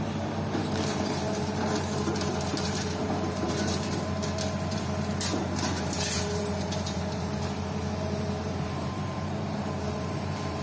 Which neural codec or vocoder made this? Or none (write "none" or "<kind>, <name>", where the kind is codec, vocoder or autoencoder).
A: vocoder, BigVGAN v2